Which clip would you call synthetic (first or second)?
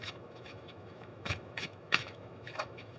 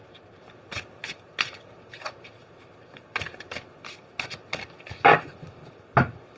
first